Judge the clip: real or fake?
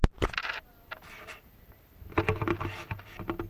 real